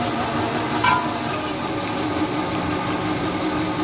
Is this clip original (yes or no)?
yes